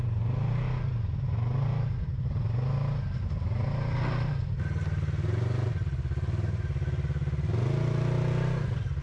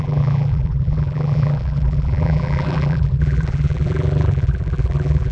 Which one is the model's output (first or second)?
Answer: second